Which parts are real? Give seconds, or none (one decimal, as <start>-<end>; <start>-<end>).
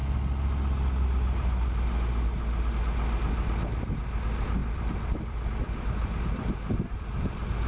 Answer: 0.0-4.6; 5.5-7.7